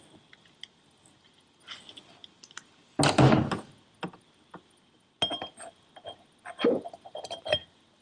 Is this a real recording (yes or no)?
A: yes